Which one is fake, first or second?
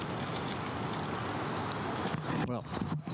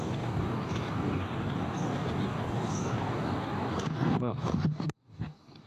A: second